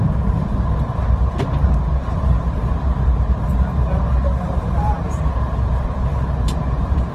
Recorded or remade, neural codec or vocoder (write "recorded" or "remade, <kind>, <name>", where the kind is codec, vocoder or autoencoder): remade, vocoder, BigVGAN v2